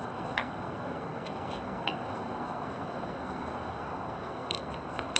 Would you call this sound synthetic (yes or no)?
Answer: yes